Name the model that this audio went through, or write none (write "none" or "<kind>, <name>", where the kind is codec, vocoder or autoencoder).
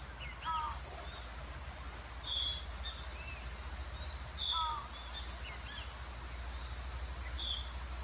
none